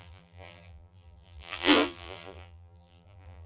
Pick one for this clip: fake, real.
fake